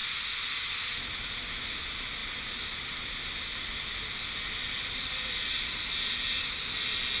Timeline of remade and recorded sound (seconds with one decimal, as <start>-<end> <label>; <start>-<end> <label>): 0.0-7.2 recorded